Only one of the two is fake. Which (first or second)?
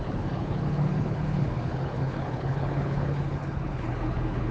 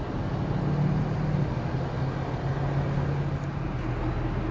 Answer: first